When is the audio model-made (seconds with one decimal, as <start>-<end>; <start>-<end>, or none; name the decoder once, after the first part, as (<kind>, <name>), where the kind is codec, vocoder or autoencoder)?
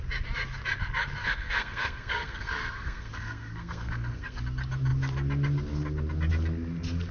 1.2-4.4 (codec, SNAC)